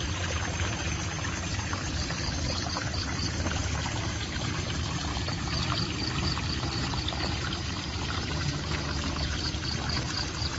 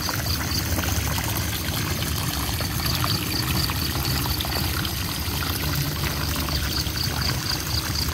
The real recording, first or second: second